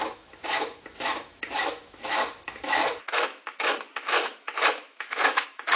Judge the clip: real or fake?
fake